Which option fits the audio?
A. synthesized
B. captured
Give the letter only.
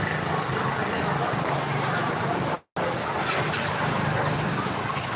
B